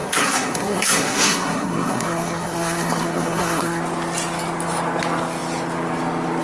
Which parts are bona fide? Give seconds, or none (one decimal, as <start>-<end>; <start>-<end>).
3.8-6.4